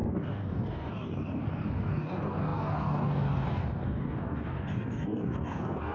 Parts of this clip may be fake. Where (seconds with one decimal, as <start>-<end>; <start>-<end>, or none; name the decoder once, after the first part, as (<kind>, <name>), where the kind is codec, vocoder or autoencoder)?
0.0-5.9 (codec, DAC)